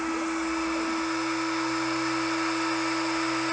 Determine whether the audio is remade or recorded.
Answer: recorded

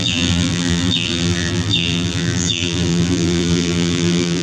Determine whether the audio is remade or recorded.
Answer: remade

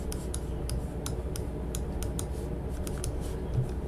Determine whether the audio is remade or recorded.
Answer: recorded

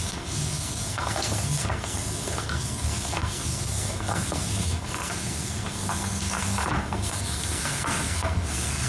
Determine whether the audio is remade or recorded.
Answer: remade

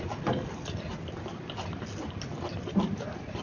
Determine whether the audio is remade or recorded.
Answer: recorded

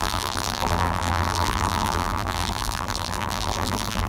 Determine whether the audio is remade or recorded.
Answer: remade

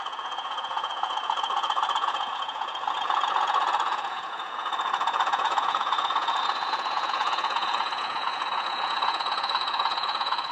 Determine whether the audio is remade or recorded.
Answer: remade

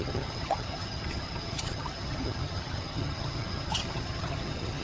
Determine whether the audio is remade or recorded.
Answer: remade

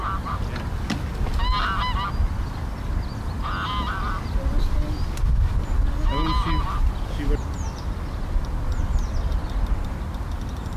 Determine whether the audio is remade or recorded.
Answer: recorded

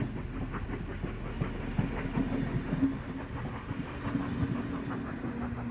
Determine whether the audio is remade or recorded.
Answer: recorded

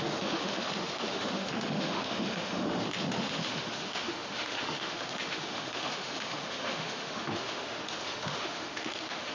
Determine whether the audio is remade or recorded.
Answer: remade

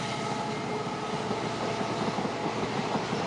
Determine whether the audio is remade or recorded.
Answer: recorded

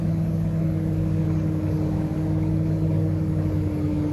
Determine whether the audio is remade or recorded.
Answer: remade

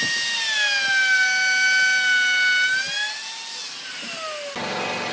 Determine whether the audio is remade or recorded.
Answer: recorded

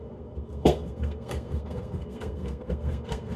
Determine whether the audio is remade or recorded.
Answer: remade